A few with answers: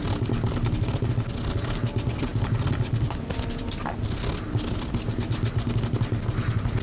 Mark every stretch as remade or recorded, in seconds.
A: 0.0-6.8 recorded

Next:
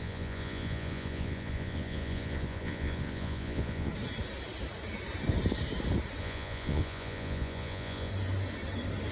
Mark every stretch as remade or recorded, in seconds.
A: 0.0-3.9 remade; 3.9-6.2 recorded; 6.2-8.1 remade; 8.1-9.1 recorded

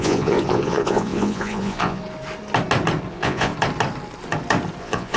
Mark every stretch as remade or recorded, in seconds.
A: 0.0-2.0 remade; 2.0-3.1 recorded; 3.1-3.5 remade; 3.5-4.8 recorded; 4.8-5.2 remade

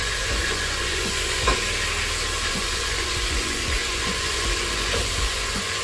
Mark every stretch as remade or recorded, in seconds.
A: 0.0-1.5 remade; 1.5-2.5 recorded; 2.5-5.8 remade

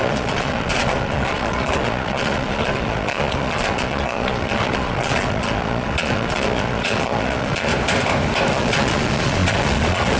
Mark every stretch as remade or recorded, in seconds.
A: 0.0-7.7 remade; 7.7-8.5 recorded; 8.5-10.2 remade

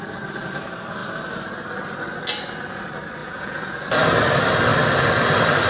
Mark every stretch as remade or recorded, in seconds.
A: 0.0-3.2 recorded; 3.2-3.8 remade; 3.8-5.7 recorded

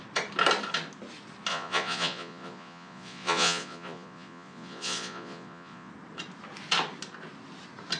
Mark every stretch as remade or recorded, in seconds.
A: 0.0-1.5 recorded; 1.5-5.9 remade; 5.9-8.0 recorded

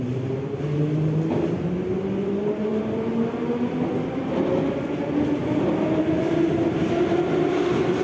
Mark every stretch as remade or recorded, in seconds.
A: 0.0-8.0 recorded